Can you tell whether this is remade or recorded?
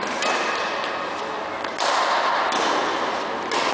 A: recorded